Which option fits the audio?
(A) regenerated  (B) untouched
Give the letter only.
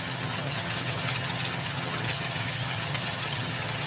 A